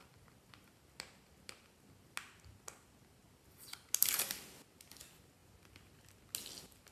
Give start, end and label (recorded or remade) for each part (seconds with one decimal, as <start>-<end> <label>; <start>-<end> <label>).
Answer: 0.0-6.9 recorded